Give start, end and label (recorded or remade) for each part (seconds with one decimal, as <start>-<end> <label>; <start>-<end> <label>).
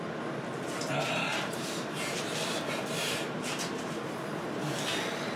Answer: 0.0-1.3 recorded; 1.3-4.5 remade; 4.5-5.4 recorded